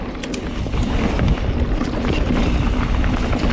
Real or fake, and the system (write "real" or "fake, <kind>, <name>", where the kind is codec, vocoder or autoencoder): real